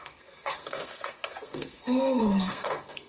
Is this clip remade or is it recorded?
remade